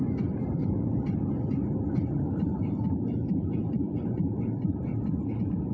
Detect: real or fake fake